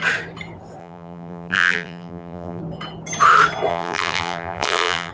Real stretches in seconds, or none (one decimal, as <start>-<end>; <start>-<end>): 0.0-0.8; 2.6-3.7